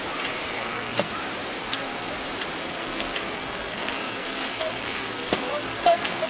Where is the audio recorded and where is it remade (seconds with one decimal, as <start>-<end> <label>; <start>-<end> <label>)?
0.0-0.5 recorded; 0.5-1.1 remade; 1.1-1.6 recorded; 1.6-2.1 remade; 2.1-2.6 recorded; 2.6-6.3 remade